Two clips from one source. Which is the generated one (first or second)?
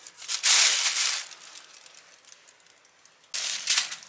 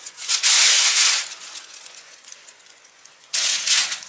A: second